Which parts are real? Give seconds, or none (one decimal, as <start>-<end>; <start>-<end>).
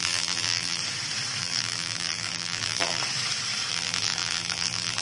0.8-1.4; 3.0-3.7